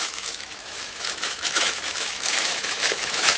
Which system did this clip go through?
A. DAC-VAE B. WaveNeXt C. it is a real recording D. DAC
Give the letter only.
A